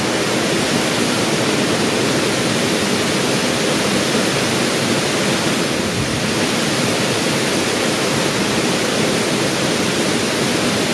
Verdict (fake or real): real